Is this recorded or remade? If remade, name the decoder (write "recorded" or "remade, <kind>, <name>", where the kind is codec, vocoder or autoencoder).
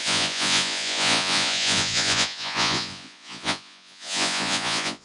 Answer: remade, vocoder, Vocos